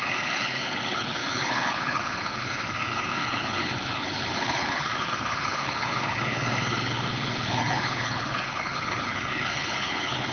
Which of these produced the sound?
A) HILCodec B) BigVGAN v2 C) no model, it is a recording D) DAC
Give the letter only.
A